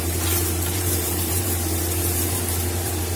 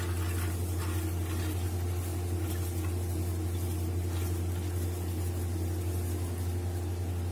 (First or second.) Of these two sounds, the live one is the second